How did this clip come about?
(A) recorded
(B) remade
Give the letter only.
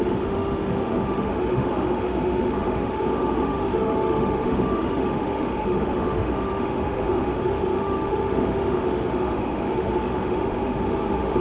B